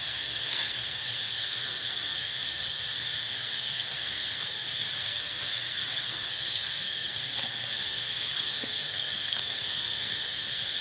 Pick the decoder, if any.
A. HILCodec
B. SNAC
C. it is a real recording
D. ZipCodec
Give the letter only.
B